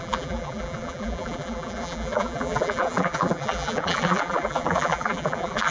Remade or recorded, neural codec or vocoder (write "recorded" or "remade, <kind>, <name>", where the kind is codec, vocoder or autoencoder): remade, vocoder, BigVGAN v2